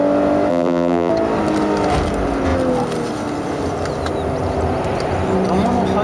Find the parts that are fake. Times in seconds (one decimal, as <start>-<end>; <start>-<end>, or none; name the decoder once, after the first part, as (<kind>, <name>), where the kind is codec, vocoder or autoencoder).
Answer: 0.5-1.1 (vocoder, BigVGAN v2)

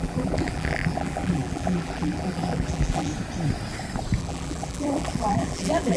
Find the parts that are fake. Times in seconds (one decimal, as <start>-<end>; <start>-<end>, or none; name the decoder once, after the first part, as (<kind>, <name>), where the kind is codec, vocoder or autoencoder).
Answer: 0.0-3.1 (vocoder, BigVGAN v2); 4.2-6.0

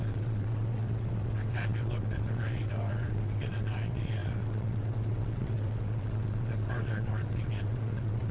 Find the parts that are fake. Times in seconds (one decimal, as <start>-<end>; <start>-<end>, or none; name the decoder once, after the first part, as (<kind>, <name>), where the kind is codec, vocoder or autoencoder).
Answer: 0.0-8.3 (vocoder, WaveNeXt)

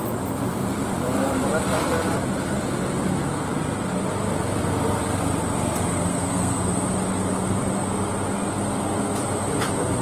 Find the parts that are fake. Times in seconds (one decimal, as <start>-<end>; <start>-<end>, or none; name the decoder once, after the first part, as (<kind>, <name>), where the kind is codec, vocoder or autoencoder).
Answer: 6.1-6.7 (codec, SNAC)